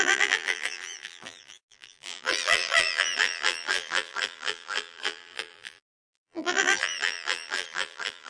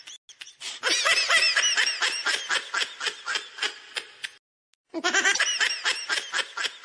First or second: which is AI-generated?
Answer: first